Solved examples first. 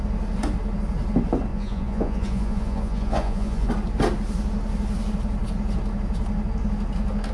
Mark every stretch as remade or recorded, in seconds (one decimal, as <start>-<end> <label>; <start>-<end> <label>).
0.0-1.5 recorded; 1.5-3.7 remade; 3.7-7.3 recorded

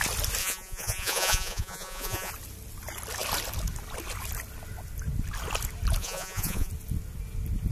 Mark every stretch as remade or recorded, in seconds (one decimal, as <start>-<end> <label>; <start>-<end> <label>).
0.0-0.4 recorded; 0.4-2.3 remade; 2.3-6.0 recorded; 6.0-6.7 remade; 6.7-7.7 recorded

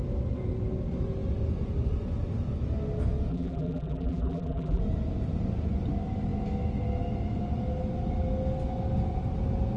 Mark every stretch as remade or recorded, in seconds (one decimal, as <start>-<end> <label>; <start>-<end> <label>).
0.0-3.3 recorded; 3.3-4.8 remade; 4.8-9.8 recorded

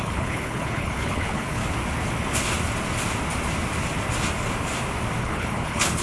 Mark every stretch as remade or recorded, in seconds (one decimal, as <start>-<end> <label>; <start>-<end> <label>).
0.0-1.6 remade; 1.6-5.2 recorded; 5.2-6.0 remade

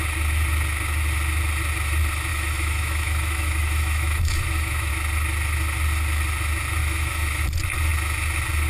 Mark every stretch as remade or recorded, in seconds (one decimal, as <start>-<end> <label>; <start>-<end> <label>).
0.0-2.3 recorded; 2.3-4.9 remade; 4.9-6.8 recorded; 6.8-7.4 remade; 7.4-8.7 recorded

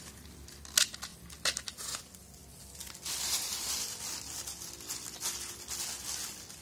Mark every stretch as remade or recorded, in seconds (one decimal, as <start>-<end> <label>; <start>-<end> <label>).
0.0-6.6 recorded